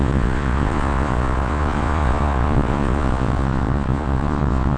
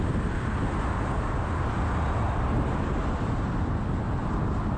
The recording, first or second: second